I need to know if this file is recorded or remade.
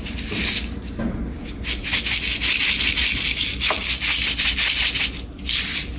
recorded